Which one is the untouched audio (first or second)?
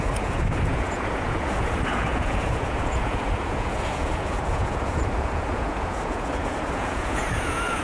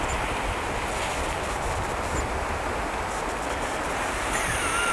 second